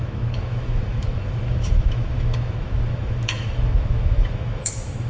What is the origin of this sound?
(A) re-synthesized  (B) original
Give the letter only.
A